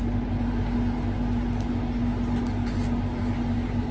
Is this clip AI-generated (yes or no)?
no